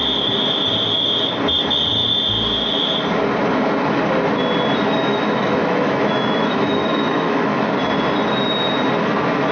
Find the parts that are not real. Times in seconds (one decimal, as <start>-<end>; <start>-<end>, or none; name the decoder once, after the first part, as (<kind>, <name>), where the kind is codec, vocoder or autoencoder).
5.0-7.6 (autoencoder, DAC-VAE)